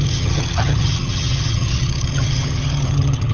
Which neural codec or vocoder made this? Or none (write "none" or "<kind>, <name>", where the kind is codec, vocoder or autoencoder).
vocoder, HiFi-GAN